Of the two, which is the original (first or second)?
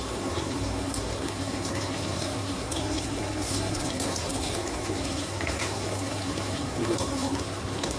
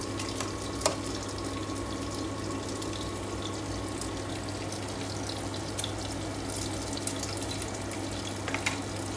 second